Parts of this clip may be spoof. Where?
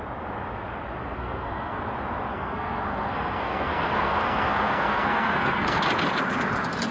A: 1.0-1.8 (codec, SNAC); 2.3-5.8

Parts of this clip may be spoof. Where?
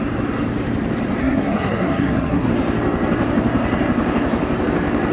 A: 1.2-2.5 (codec, SNAC)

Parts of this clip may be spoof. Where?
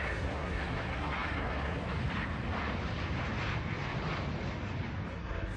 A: 0.0-1.8 (codec, SNAC); 5.1-5.6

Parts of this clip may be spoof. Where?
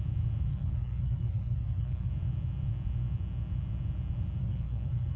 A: 0.5-2.1 (codec, SNAC); 4.4-5.2